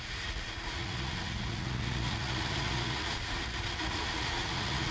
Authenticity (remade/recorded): remade